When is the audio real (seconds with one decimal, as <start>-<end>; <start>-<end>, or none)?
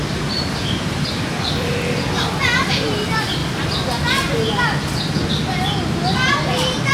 3.4-6.3